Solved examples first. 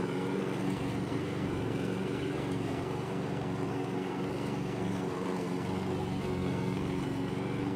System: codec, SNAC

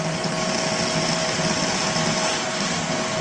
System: none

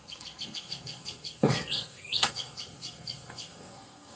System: codec, SNAC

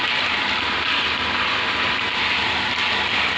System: none